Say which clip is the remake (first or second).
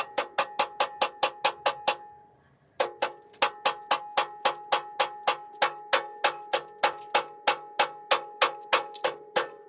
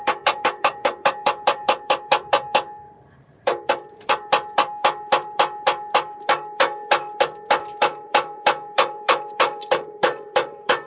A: second